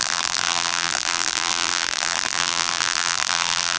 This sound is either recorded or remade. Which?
remade